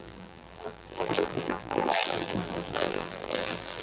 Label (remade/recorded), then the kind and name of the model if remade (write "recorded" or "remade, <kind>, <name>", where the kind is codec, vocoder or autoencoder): remade, vocoder, BigVGAN v2